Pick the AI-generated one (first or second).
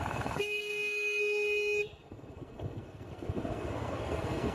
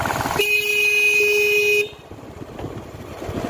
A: first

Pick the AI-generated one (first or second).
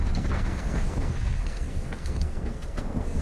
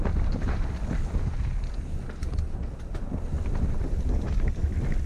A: first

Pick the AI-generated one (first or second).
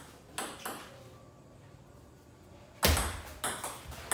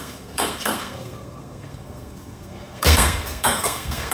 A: second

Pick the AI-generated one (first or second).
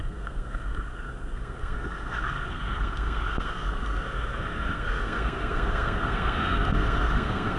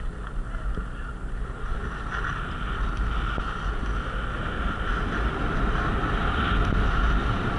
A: first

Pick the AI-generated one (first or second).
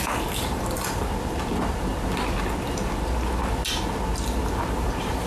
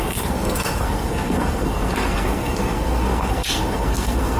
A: second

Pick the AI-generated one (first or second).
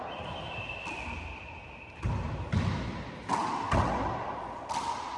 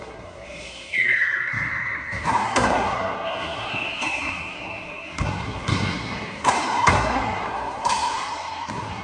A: second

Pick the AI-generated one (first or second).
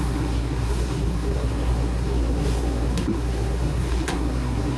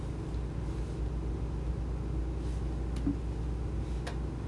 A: first